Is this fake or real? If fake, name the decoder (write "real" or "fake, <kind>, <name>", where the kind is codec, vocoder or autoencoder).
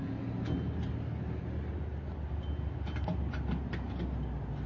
real